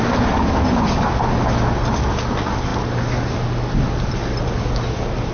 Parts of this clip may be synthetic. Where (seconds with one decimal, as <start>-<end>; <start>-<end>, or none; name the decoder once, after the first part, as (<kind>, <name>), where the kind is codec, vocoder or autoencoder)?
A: none